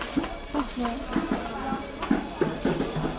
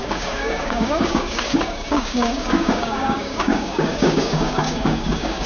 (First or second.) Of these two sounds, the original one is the first